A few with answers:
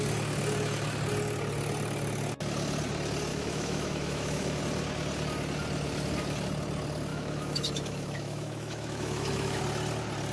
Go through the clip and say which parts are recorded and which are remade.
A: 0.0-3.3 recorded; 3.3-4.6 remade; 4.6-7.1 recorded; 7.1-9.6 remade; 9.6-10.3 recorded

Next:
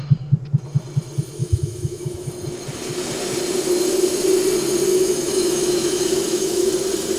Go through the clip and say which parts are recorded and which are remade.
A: 0.0-1.4 recorded; 1.4-2.3 remade; 2.3-4.9 recorded; 4.9-6.7 remade; 6.7-7.2 recorded